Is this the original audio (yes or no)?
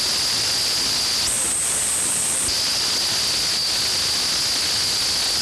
yes